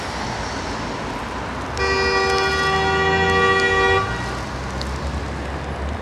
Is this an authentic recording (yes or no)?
yes